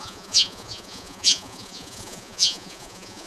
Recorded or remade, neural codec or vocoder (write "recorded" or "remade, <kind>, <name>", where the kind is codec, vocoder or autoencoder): remade, vocoder, Vocos